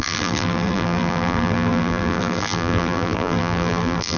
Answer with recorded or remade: remade